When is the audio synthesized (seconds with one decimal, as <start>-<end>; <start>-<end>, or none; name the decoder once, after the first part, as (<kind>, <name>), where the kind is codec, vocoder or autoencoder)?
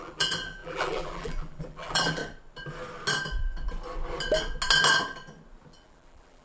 0.0-2.2 (vocoder, BigVGAN v2); 5.7-6.4